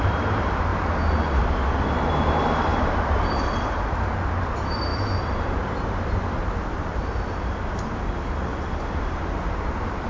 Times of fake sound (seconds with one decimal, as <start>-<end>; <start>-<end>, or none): 0.0-0.7; 1.4-10.1